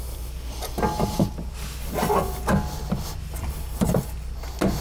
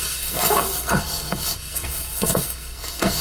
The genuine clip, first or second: first